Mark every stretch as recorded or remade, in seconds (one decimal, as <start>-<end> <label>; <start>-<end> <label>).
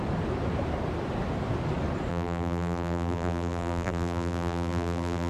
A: 0.0-2.1 recorded; 2.1-5.3 remade